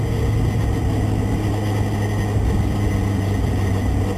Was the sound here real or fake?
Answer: real